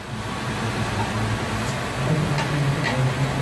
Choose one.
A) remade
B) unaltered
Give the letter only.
B